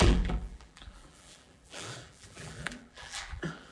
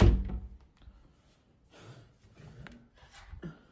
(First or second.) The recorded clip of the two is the second